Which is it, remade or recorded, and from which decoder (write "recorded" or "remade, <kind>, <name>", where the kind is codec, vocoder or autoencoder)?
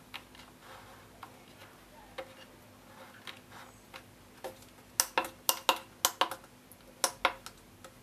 recorded